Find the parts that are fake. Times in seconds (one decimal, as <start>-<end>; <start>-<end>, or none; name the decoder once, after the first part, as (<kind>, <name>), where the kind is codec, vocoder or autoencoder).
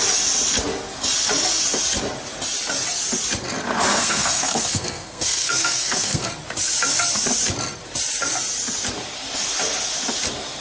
3.9-6.3 (codec, SNAC)